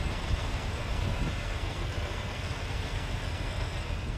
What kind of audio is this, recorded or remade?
remade